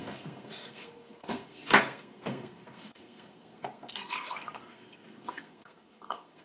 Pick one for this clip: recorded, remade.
remade